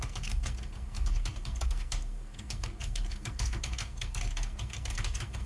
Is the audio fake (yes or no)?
yes